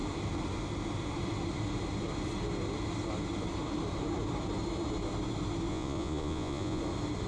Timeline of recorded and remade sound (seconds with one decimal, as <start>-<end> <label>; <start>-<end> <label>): 0.0-5.7 recorded; 5.7-6.8 remade; 6.8-7.3 recorded